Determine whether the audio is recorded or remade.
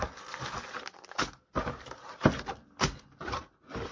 recorded